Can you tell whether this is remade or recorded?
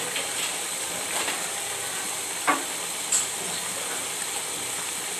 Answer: recorded